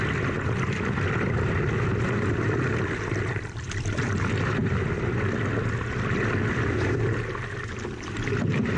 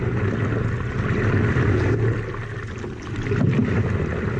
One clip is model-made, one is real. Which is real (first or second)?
second